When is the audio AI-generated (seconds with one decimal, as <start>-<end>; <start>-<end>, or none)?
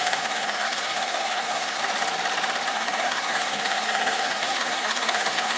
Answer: 0.0-1.8; 2.7-5.6